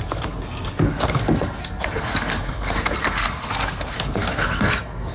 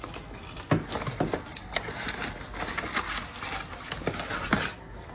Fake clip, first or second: first